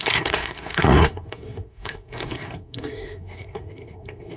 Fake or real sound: fake